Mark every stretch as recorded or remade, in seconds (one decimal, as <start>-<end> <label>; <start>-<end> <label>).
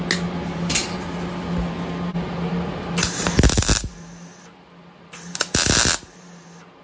0.0-6.8 recorded